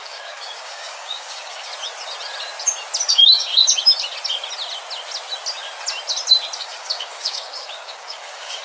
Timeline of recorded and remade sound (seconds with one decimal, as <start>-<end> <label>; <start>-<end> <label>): 0.0-1.7 remade; 1.7-3.1 recorded; 3.1-3.5 remade; 3.5-6.6 recorded; 6.6-8.6 remade